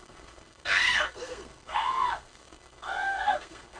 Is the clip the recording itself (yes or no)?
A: no